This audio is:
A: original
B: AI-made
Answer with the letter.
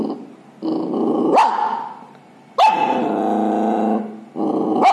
A